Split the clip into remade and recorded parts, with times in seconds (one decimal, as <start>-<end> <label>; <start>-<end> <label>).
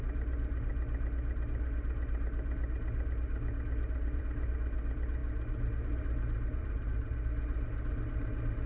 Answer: 0.0-8.7 recorded